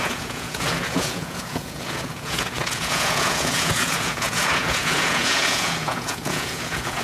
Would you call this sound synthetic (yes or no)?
yes